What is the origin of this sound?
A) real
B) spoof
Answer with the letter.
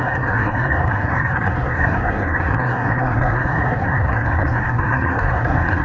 B